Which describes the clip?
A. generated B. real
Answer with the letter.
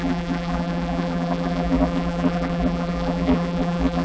A